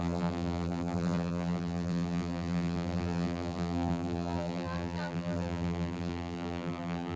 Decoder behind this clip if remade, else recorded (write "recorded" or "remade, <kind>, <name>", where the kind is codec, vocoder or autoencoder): remade, vocoder, BigVGAN v2